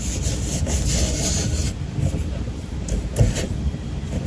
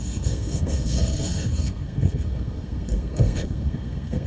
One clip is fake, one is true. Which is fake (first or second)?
second